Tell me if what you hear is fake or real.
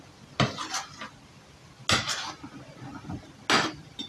real